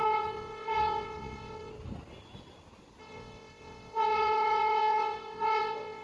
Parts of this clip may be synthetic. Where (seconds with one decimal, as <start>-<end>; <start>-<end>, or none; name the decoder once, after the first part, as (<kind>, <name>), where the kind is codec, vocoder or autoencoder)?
0.0-1.7 (vocoder, WaveNeXt); 3.0-6.0